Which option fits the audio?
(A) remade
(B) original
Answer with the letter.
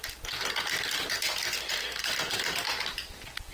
A